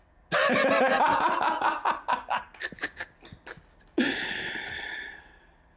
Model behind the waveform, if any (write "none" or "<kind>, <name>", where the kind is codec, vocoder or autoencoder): none